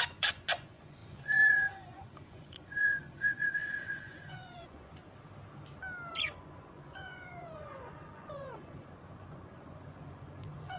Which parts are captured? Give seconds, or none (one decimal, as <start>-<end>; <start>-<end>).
5.0-6.1